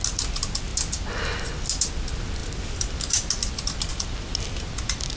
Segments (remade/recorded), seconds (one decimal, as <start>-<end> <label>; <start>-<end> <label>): 0.0-5.2 recorded

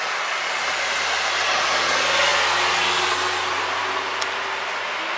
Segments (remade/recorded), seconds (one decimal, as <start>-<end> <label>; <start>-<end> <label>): 0.0-5.2 recorded

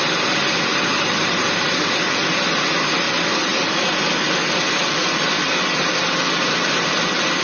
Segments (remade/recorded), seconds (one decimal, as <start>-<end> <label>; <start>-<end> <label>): 0.0-0.7 recorded; 0.7-1.9 remade; 1.9-7.4 recorded

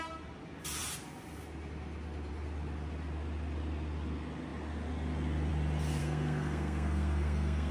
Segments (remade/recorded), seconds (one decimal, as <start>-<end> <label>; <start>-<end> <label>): 0.0-6.0 recorded; 6.0-7.7 remade

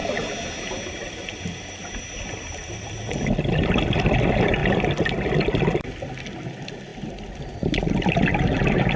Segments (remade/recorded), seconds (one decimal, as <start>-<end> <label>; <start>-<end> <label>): 0.0-9.0 recorded